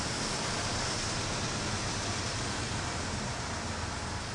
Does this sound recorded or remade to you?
recorded